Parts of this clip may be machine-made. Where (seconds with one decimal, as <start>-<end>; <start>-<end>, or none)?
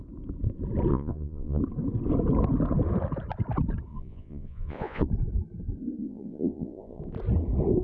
0.9-1.6; 3.9-5.1; 6.0-7.0